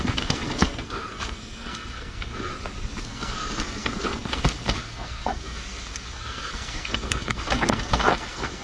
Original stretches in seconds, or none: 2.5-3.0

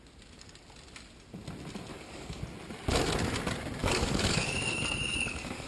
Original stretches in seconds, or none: 0.0-1.9; 2.4-3.8